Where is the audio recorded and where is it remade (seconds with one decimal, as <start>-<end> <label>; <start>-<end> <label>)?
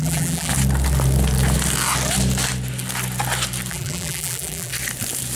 0.0-0.5 remade; 0.5-3.7 recorded; 3.7-4.7 remade; 4.7-5.4 recorded